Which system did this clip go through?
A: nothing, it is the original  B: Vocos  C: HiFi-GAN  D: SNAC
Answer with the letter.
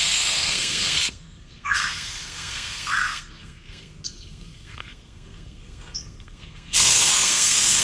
D